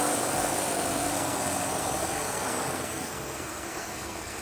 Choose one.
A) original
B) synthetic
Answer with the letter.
B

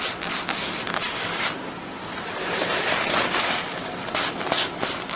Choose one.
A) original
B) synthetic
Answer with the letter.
A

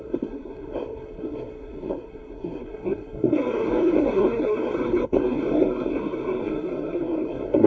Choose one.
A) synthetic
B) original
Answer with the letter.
A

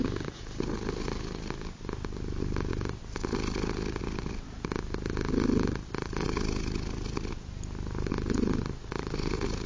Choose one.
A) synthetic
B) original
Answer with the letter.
B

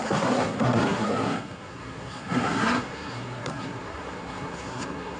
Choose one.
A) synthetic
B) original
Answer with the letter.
A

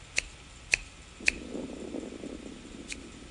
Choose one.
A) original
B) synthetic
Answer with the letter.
A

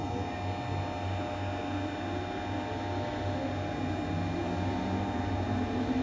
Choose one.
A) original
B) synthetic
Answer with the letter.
A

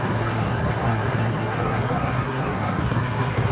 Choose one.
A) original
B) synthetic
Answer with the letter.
B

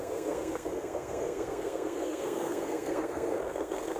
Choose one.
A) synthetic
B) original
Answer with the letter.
A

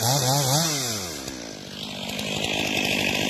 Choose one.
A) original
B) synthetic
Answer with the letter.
A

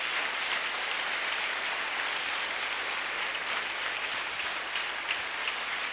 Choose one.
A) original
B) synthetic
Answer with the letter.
A